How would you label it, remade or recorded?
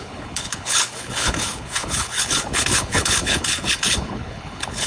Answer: remade